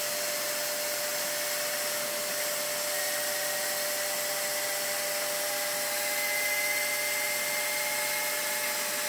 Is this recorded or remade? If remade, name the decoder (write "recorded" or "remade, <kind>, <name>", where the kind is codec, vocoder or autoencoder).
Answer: recorded